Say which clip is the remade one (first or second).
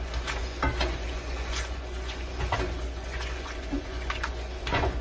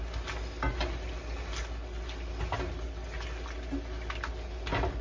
first